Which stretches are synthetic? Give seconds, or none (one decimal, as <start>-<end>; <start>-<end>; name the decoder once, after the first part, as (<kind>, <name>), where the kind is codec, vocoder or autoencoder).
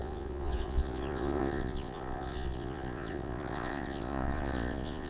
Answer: 0.0-5.1 (vocoder, Vocos)